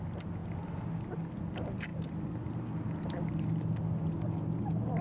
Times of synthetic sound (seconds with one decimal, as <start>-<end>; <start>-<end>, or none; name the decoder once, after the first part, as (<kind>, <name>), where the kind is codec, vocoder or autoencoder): none